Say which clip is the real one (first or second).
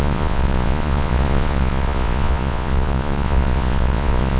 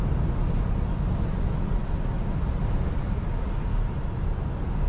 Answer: second